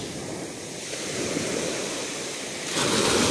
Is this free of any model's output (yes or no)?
yes